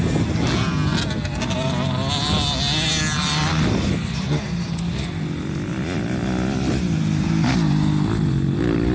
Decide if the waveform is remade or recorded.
recorded